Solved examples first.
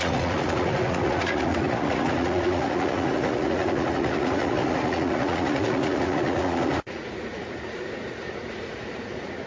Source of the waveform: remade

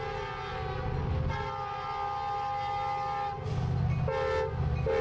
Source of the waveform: recorded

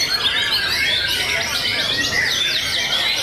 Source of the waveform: recorded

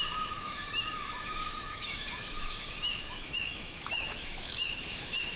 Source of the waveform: remade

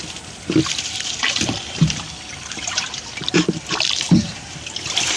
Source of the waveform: recorded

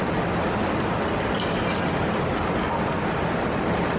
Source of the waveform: recorded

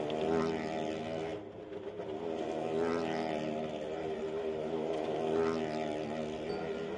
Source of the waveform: recorded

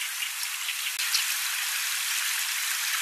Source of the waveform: recorded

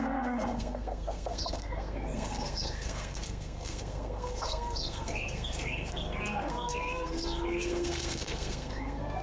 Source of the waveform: remade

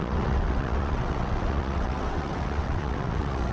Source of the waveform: remade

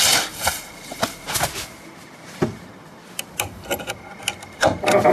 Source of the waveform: recorded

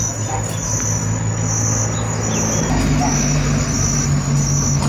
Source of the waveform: recorded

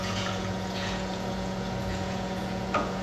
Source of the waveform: remade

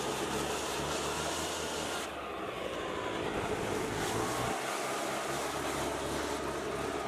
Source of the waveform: recorded